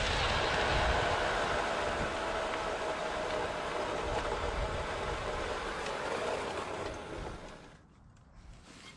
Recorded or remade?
recorded